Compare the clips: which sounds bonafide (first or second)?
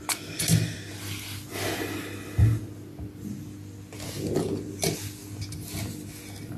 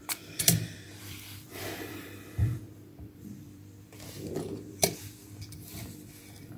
first